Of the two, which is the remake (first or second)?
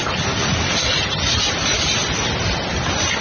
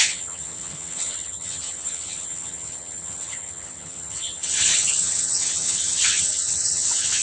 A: second